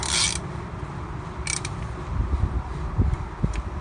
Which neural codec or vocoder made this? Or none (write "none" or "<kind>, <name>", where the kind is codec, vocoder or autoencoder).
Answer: none